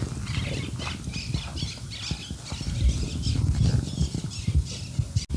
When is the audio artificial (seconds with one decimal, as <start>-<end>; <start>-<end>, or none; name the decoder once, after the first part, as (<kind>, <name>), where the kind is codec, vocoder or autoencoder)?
none